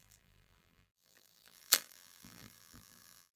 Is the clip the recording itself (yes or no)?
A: no